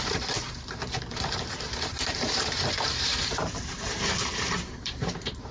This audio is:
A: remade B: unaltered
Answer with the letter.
A